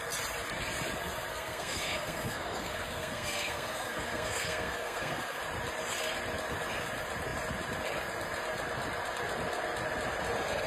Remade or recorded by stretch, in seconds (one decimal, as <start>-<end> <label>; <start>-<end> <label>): 0.0-1.3 recorded; 1.3-5.4 remade; 5.4-10.7 recorded